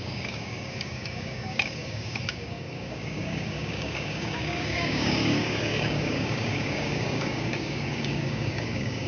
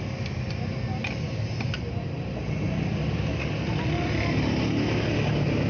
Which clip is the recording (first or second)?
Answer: second